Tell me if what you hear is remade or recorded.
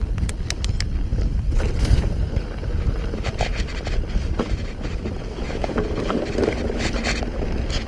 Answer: recorded